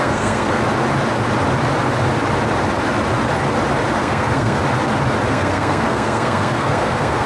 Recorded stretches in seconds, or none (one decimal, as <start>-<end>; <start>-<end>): 0.6-4.0; 4.6-5.3